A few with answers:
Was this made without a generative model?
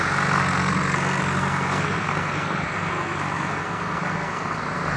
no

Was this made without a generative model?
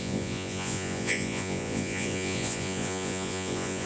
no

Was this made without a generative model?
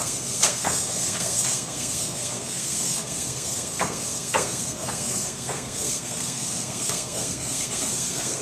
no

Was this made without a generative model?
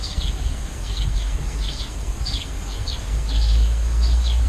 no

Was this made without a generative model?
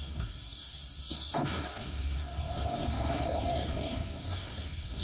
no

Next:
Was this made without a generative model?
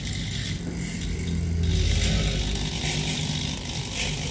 yes